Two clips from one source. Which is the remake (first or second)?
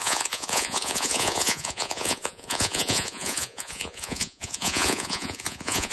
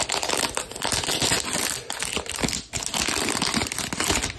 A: first